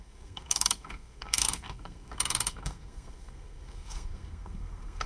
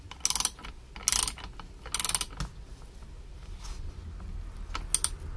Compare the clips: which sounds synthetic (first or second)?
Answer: first